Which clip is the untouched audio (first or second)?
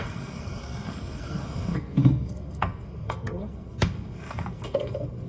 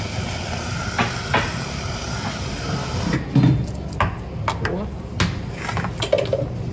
second